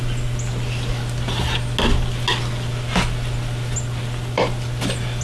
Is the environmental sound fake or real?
real